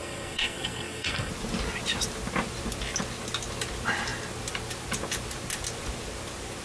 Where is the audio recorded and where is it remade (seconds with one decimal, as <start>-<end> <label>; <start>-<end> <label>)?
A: 0.0-1.3 remade; 1.3-6.6 recorded